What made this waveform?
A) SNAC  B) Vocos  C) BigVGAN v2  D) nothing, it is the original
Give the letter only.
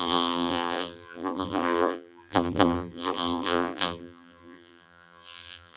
C